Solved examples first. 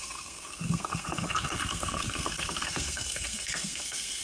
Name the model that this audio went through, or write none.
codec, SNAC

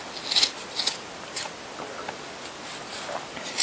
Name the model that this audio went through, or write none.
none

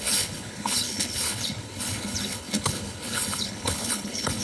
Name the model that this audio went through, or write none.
codec, HILCodec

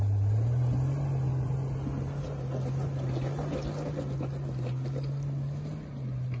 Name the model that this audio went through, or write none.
none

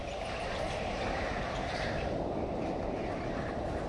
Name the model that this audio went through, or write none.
none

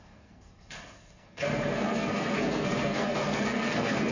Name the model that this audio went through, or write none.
codec, SNAC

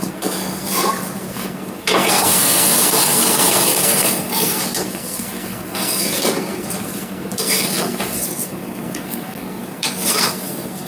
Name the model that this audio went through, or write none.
codec, SNAC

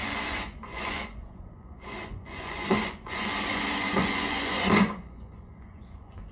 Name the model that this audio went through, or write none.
vocoder, Vocos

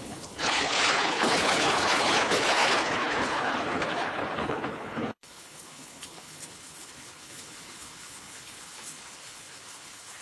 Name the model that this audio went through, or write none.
codec, HILCodec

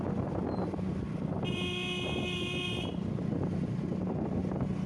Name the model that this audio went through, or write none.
none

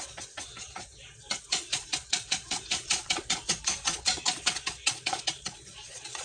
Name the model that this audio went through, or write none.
vocoder, Vocos